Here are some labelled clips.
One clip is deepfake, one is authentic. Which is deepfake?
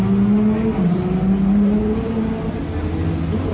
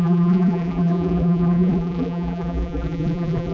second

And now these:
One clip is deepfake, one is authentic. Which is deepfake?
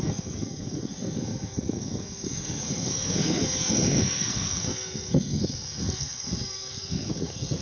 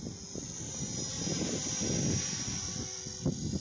first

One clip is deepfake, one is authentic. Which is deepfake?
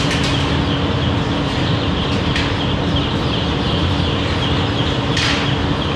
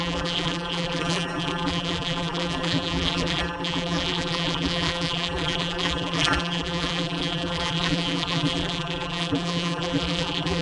second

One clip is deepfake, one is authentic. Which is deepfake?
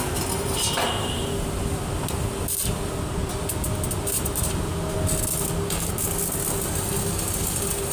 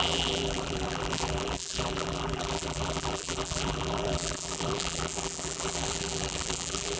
second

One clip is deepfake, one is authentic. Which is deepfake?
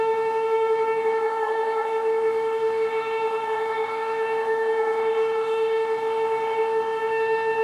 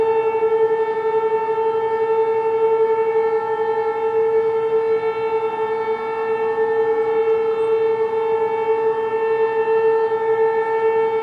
first